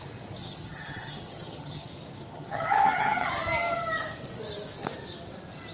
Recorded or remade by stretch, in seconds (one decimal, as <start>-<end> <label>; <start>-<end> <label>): 0.0-0.4 recorded; 0.4-1.9 remade; 1.9-2.3 recorded; 2.3-3.3 remade; 3.3-5.7 recorded